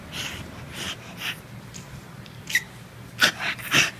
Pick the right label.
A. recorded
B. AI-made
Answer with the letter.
A